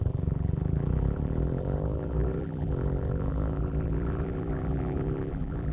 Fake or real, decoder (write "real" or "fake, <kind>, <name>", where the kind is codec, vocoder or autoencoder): fake, vocoder, BigVGAN v2